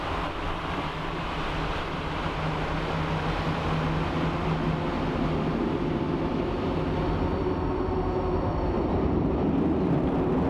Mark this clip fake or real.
real